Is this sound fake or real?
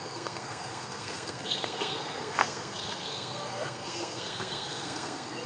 fake